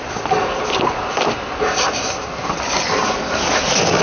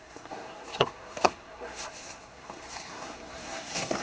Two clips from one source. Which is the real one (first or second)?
first